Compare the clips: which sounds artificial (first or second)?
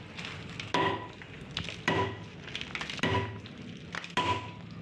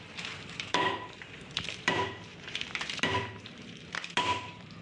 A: second